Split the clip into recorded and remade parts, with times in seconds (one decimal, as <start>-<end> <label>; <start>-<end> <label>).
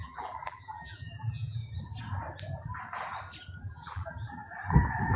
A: 0.0-1.6 remade; 1.6-3.6 recorded; 3.6-4.4 remade; 4.4-5.2 recorded